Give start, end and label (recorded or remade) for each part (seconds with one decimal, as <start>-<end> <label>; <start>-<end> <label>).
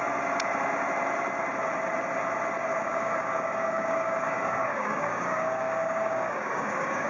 0.0-2.7 recorded; 2.7-7.1 remade